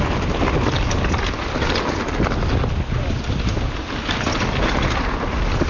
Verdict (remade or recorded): recorded